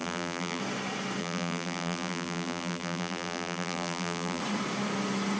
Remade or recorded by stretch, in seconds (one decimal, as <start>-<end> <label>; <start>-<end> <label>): 0.0-0.6 remade; 0.6-1.2 recorded; 1.2-4.4 remade; 4.4-5.4 recorded